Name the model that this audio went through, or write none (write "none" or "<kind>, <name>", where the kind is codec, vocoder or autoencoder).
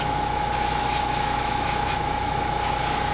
autoencoder, DAC-VAE